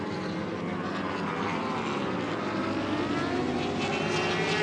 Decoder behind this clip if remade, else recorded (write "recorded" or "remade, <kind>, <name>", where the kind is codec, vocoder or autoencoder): recorded